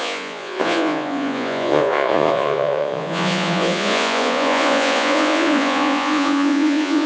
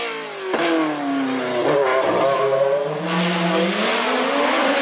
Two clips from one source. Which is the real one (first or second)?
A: second